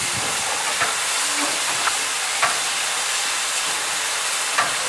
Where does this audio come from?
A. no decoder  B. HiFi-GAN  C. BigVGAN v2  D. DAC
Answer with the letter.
C